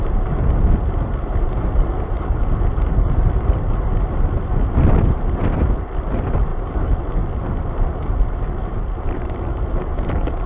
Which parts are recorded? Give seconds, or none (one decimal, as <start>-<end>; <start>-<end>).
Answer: 0.0-10.5